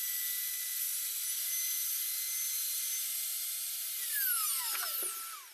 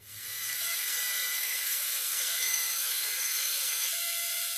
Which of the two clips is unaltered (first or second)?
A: first